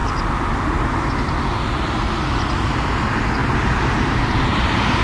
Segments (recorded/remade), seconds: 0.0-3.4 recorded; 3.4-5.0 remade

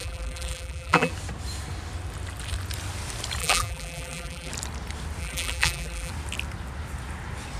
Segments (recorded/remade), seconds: 0.0-1.1 remade; 1.1-3.4 recorded; 3.4-4.5 remade; 4.5-5.2 recorded; 5.2-6.1 remade; 6.1-7.6 recorded

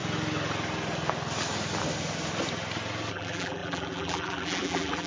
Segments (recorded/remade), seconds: 0.0-3.1 recorded; 3.1-5.1 remade

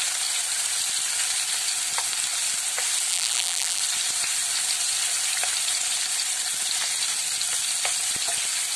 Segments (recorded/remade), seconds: 0.0-3.1 recorded; 3.1-3.8 remade; 3.8-8.8 recorded